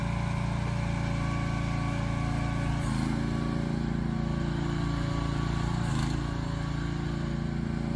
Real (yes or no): yes